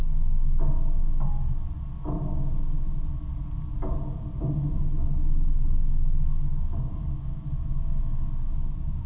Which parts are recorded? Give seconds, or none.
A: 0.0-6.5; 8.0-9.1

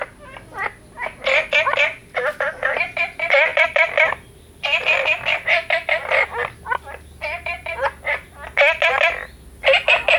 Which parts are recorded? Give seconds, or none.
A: 0.0-1.9; 2.6-3.5; 8.3-10.2

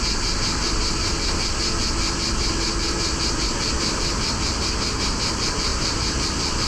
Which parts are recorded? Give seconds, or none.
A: 0.0-6.7